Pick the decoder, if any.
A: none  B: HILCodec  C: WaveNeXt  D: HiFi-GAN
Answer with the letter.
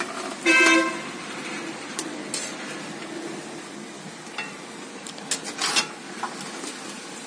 A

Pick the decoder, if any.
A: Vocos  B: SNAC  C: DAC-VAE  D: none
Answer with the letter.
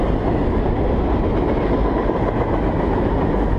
D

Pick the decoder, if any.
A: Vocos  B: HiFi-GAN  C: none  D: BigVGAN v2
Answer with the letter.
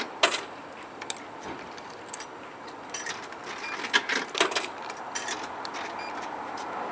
C